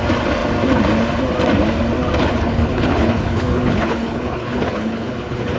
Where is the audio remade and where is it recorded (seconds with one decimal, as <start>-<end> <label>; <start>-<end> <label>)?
0.0-2.2 recorded; 2.2-5.6 remade

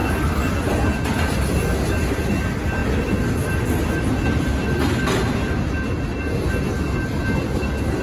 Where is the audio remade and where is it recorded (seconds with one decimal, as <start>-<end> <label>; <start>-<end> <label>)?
0.0-8.0 recorded

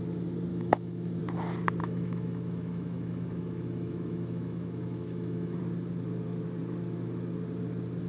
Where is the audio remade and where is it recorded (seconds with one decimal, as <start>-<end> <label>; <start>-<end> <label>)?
0.0-0.5 recorded; 0.5-1.2 remade; 1.2-1.8 recorded; 1.8-5.6 remade; 5.6-8.1 recorded

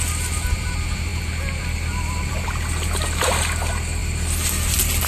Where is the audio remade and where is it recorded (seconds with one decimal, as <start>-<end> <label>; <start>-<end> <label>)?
0.0-5.1 recorded

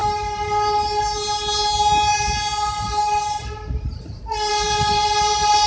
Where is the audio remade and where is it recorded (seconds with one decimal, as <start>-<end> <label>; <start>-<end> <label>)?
0.0-5.7 recorded

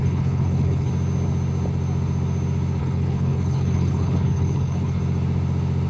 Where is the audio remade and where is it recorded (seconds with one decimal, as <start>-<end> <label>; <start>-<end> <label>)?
0.0-0.9 remade; 0.9-2.8 recorded; 2.8-5.0 remade; 5.0-5.9 recorded